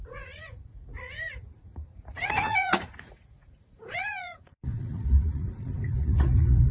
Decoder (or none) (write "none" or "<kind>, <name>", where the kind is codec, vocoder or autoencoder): vocoder, Vocos